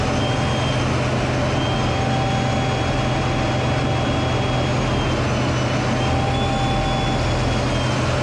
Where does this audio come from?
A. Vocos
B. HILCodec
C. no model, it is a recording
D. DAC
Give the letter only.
C